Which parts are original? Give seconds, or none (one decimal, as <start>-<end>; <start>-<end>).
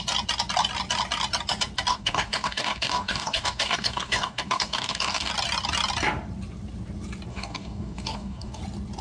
0.0-1.9; 5.3-7.3; 8.6-9.0